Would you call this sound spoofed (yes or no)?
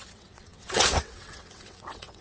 yes